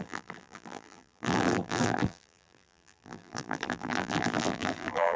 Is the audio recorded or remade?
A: remade